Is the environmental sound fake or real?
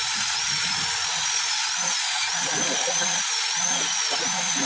fake